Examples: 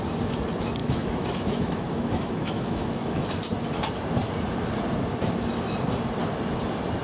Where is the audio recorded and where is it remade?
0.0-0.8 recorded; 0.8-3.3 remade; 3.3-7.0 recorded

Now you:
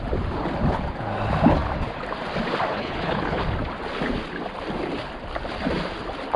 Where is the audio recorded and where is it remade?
0.0-2.7 recorded; 2.7-3.4 remade; 3.4-6.4 recorded

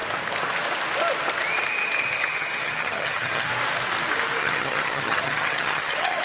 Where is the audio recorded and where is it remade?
0.0-2.2 recorded; 2.2-3.5 remade; 3.5-4.4 recorded; 4.4-6.2 remade